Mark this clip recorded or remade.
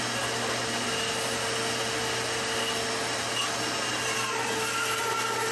recorded